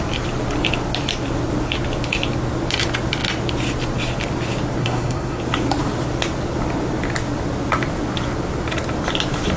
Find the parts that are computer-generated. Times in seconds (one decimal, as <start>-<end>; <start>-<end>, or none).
4.8-5.4

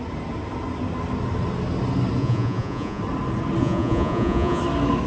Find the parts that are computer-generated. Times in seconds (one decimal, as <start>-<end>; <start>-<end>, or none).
2.2-3.0; 3.6-4.6

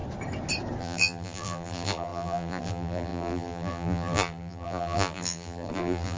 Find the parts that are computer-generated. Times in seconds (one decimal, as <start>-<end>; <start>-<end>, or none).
0.8-6.2

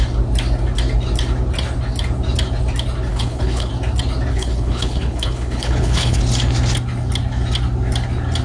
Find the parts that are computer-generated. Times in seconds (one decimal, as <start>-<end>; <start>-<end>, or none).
3.1-3.7; 4.3-6.2

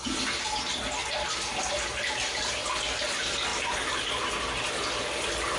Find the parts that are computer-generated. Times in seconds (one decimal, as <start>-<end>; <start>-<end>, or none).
none

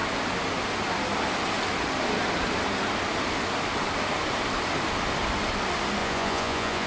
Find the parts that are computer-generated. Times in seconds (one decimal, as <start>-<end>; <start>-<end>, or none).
6.0-6.9